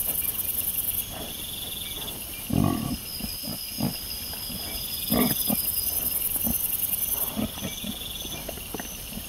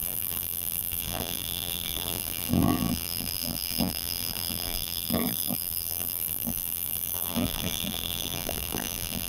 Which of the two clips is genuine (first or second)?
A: first